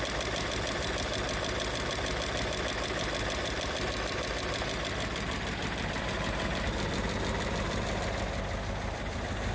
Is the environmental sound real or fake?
fake